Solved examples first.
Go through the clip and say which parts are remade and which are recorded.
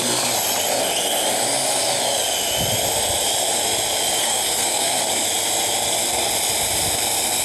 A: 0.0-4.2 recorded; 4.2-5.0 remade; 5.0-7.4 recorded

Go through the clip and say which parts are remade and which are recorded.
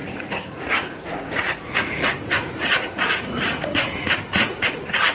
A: 0.0-5.1 remade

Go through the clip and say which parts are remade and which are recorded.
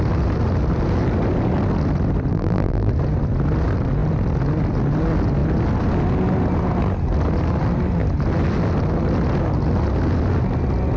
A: 0.0-2.3 recorded; 2.3-2.9 remade; 2.9-11.0 recorded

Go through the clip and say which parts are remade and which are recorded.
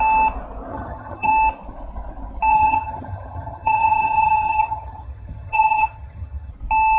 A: 0.0-0.7 recorded; 0.7-1.3 remade; 1.3-2.5 recorded; 2.5-6.5 remade; 6.5-7.0 recorded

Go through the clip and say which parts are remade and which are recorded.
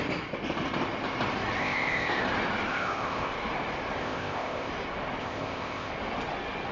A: 0.0-1.6 recorded; 1.6-2.2 remade; 2.2-2.7 recorded; 2.7-3.3 remade; 3.3-4.0 recorded; 4.0-4.7 remade; 4.7-5.2 recorded; 5.2-5.9 remade; 5.9-6.7 recorded